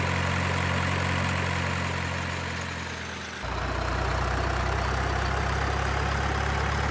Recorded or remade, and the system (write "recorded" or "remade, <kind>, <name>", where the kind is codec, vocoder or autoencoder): recorded